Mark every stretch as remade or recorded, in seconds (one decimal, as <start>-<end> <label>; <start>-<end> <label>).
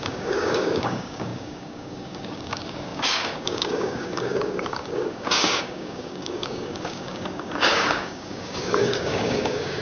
0.0-9.8 remade